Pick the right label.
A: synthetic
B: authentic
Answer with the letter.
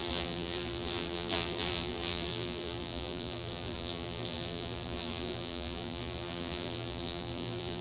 A